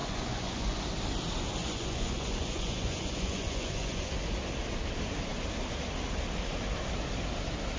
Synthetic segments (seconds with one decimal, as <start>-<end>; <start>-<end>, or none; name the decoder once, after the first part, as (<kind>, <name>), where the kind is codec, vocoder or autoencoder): 0.0-0.8 (vocoder, Vocos); 1.6-4.1